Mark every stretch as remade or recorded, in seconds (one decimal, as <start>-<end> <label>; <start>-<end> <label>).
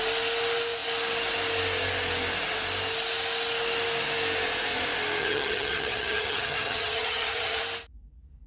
0.0-5.2 recorded; 5.2-7.6 remade; 7.6-8.5 recorded